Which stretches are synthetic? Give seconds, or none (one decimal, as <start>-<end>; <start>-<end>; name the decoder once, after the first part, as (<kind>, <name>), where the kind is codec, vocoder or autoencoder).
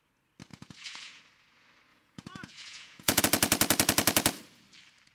0.5-1.2 (vocoder, Vocos); 1.9-3.2